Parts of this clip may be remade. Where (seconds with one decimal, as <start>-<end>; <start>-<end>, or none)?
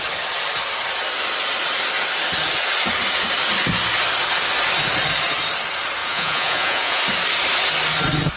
6.0-7.0